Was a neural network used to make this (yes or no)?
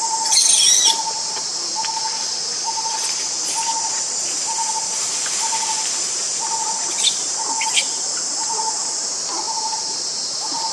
yes